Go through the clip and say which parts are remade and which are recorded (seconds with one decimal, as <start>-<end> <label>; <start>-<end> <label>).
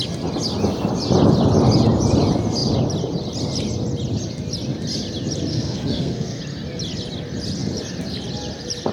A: 0.0-5.5 recorded; 5.5-6.4 remade; 6.4-8.9 recorded